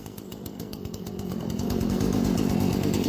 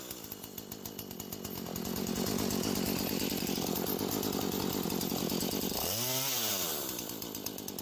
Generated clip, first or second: first